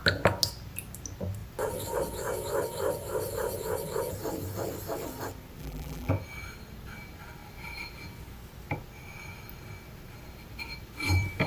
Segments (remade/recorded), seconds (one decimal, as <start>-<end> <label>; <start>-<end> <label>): 0.0-5.6 recorded; 5.6-6.1 remade; 6.1-11.5 recorded